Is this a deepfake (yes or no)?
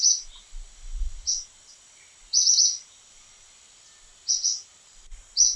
no